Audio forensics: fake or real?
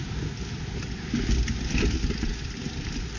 real